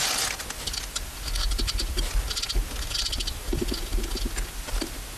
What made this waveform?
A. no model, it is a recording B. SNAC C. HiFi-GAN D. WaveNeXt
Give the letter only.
A